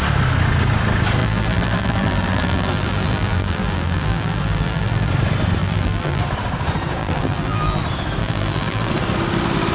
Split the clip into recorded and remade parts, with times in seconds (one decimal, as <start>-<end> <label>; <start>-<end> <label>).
0.0-1.2 recorded; 1.2-5.1 remade; 5.1-5.6 recorded; 5.6-6.2 remade; 6.2-7.0 recorded; 7.0-7.8 remade; 7.8-8.2 recorded; 8.2-8.9 remade; 8.9-9.7 recorded